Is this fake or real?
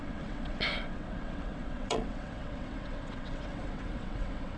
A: fake